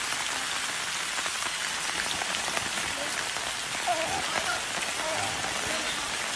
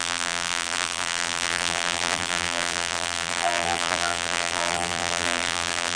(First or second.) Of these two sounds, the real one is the first